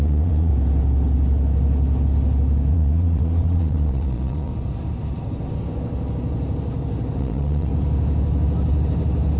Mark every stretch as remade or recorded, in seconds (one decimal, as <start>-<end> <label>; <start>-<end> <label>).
0.0-0.5 remade; 0.5-2.7 recorded; 2.7-4.5 remade; 4.5-7.2 recorded; 7.2-7.7 remade; 7.7-9.4 recorded